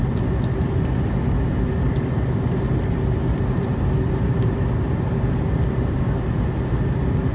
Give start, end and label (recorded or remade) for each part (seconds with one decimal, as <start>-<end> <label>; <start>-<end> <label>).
0.0-7.3 recorded